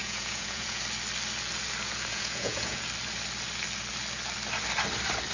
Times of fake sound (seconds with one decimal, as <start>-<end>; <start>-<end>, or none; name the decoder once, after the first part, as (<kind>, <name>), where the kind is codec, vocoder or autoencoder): 0.0-0.8 (vocoder, Vocos); 2.1-2.8